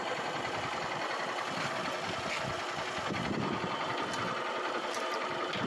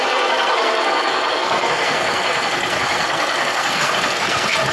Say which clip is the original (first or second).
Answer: first